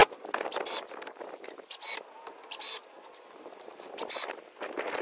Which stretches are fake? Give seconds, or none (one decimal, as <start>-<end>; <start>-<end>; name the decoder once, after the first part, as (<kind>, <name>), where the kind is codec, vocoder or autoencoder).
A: none